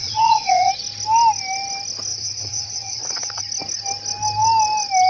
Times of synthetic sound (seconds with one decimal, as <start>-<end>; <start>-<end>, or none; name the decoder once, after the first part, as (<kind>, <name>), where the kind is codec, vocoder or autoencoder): 0.0-0.7 (vocoder, WaveNeXt); 2.1-3.4